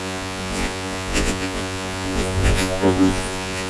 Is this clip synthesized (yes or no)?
yes